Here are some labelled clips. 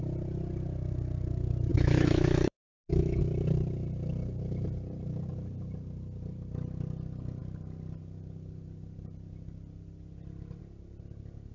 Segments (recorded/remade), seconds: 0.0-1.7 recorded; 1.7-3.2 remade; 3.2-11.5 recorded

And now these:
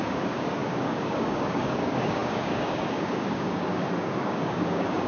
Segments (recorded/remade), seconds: 0.0-5.1 remade

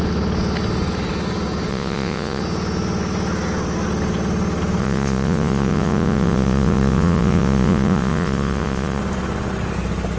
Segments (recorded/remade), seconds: 0.0-1.7 recorded; 1.7-2.4 remade; 2.4-4.8 recorded; 4.8-9.0 remade; 9.0-10.2 recorded

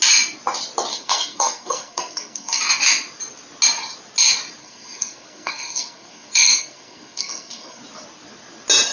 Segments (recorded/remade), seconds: 0.0-0.9 recorded; 0.9-2.6 remade; 2.6-4.6 recorded; 4.6-7.8 remade; 7.8-8.9 recorded

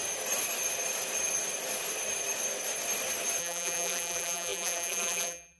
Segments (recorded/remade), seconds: 0.0-3.4 recorded; 3.4-5.6 remade

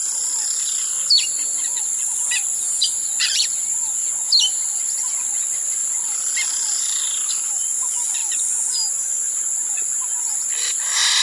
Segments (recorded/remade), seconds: 0.0-2.6 recorded; 2.6-4.1 remade; 4.1-5.8 recorded; 5.8-6.8 remade; 6.8-11.2 recorded

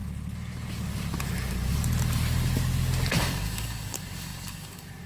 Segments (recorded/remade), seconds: 0.0-3.1 recorded; 3.1-5.1 remade